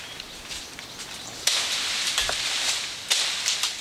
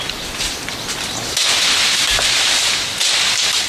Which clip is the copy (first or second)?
first